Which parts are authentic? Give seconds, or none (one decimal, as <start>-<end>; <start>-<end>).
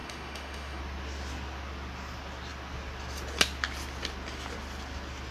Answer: 0.8-5.3